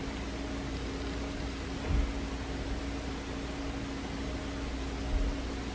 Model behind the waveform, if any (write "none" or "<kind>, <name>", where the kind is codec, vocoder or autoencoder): none